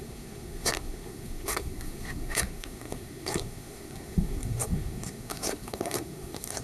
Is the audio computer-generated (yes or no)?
yes